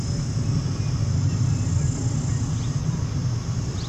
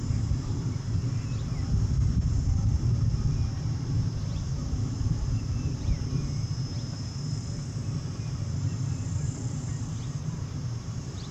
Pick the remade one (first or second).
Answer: second